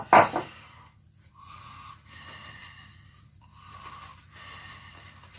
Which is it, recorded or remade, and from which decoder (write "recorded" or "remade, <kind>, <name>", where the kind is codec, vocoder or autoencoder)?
remade, vocoder, BigVGAN v2